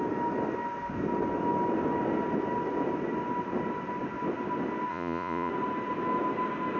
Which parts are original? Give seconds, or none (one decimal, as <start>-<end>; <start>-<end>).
0.0-4.9; 5.5-6.8